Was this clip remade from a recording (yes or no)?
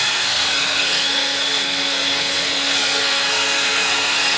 yes